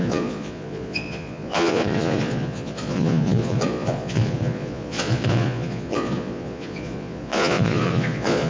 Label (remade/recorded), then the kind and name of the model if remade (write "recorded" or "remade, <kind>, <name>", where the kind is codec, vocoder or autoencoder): remade, vocoder, Vocos